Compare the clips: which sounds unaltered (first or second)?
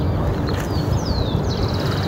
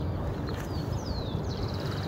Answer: first